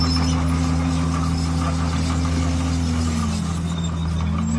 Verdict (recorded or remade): recorded